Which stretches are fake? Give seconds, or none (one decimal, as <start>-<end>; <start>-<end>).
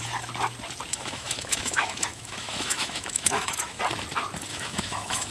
0.9-3.8; 4.5-5.3